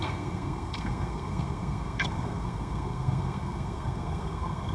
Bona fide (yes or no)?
no